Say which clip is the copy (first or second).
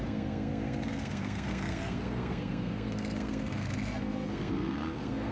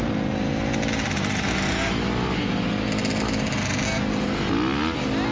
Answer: first